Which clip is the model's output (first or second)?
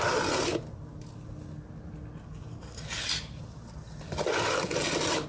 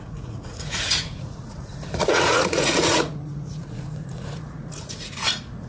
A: second